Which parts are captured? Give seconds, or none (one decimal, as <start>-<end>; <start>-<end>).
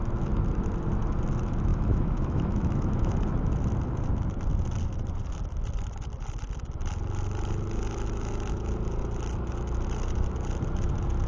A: 0.0-1.7; 3.1-11.3